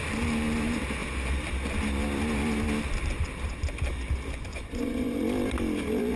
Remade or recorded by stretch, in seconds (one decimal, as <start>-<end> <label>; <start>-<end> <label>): 0.0-4.5 recorded; 4.5-5.2 remade; 5.2-6.2 recorded